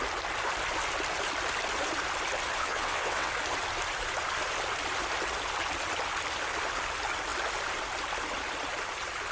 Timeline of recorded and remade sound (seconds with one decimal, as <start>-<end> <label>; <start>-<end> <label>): 0.0-2.6 recorded; 2.6-3.3 remade; 3.3-9.3 recorded